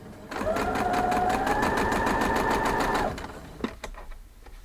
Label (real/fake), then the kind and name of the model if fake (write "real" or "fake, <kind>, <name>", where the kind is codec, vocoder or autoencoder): real